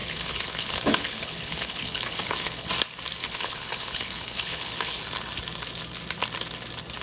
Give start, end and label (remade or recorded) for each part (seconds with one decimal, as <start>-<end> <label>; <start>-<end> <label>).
0.0-2.7 remade; 2.7-3.2 recorded; 3.2-5.0 remade; 5.0-7.0 recorded